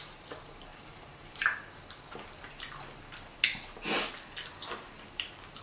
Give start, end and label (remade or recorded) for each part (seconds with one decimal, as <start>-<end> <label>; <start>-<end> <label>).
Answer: 0.0-0.7 recorded; 0.7-1.8 remade; 1.8-5.6 recorded